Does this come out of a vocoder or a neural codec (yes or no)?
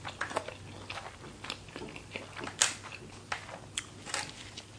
no